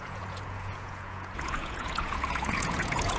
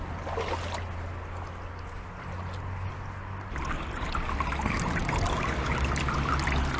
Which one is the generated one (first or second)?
first